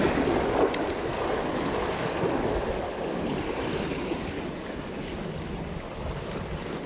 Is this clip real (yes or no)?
yes